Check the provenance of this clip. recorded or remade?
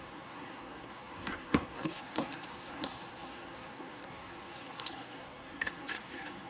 remade